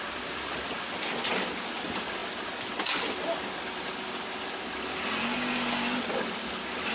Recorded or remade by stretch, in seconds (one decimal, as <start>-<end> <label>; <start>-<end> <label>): 0.0-6.9 recorded